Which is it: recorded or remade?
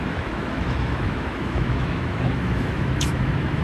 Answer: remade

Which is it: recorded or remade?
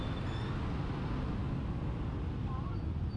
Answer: recorded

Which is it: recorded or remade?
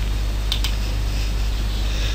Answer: recorded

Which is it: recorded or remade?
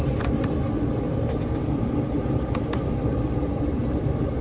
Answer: remade